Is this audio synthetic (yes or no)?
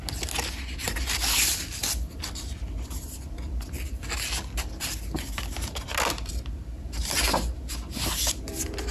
no